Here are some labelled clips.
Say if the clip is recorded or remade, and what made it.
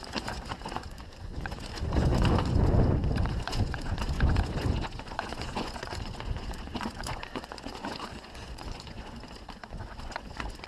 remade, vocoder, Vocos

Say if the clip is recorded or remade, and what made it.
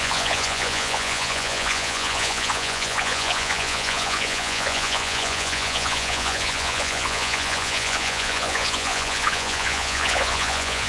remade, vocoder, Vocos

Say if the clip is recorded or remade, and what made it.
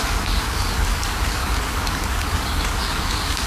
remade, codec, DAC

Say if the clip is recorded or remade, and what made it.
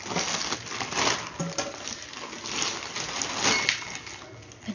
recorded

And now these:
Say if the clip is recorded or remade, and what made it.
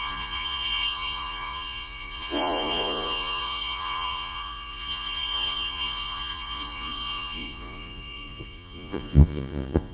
remade, vocoder, Vocos